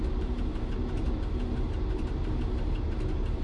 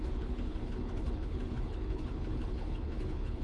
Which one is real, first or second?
first